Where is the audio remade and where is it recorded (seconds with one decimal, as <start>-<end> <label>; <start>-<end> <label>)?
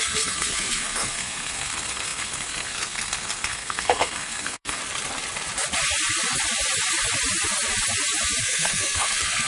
0.0-4.8 remade; 4.8-8.4 recorded; 8.4-9.5 remade